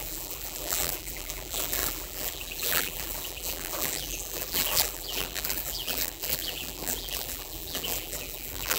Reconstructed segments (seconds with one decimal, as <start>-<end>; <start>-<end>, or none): 0.0-8.8

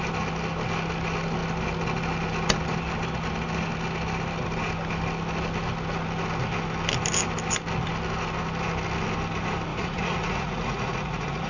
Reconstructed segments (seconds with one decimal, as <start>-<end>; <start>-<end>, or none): 9.7-11.5